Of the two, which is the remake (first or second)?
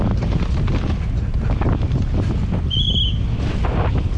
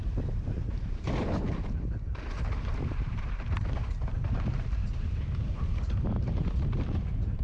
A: second